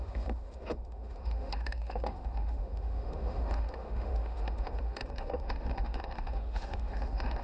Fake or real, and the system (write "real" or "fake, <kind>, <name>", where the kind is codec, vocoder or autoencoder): fake, autoencoder, DAC-VAE